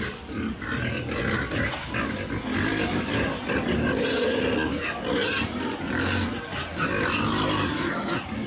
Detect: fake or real real